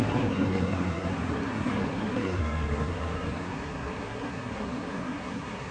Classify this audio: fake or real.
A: fake